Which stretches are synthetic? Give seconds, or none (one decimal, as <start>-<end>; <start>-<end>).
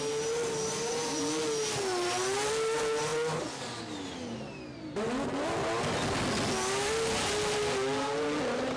none